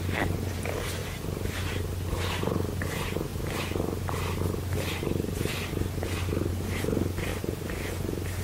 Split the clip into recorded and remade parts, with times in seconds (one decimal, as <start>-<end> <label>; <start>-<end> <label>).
0.0-1.0 recorded; 1.0-1.7 remade; 1.7-8.4 recorded